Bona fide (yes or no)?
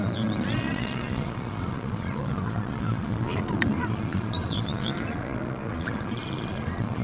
no